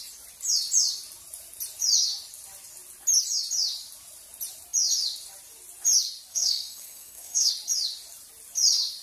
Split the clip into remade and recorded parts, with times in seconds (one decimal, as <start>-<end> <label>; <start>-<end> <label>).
0.0-6.3 recorded; 6.3-7.5 remade; 7.5-9.0 recorded